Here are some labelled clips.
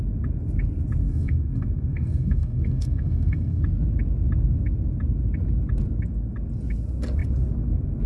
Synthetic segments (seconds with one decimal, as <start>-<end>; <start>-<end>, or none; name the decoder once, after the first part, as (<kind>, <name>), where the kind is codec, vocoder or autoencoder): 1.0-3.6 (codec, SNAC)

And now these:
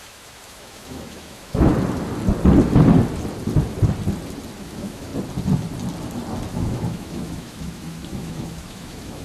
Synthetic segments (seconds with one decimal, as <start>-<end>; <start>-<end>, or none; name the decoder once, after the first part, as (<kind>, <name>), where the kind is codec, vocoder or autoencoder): 0.0-1.7 (autoencoder, DAC-VAE); 4.6-5.1; 6.5-9.2

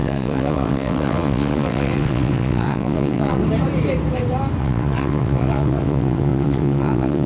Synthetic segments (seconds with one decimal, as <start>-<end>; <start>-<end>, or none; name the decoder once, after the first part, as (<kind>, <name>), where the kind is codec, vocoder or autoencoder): 0.0-3.4 (vocoder, WaveNeXt); 4.6-7.3

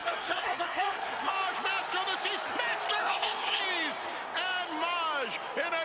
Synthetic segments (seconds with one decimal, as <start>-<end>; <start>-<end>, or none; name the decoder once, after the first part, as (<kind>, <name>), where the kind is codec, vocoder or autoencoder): 0.0-1.3 (codec, SNAC); 3.0-3.6

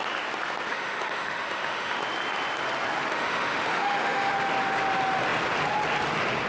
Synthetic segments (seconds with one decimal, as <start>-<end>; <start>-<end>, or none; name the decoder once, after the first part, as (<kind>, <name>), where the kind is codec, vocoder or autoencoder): 0.7-2.0 (autoencoder, DAC-VAE); 3.1-4.3

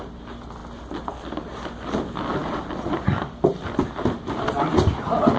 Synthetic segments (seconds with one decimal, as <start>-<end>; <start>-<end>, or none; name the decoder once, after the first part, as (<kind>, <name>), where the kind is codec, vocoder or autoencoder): 0.6-1.7 (vocoder, BigVGAN v2)

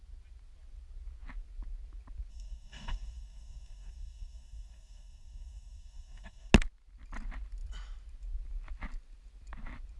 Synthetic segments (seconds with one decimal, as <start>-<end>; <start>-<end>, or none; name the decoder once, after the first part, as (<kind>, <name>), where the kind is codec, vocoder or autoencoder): 2.3-6.5 (codec, DAC)